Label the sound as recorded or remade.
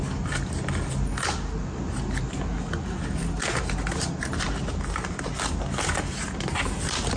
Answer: recorded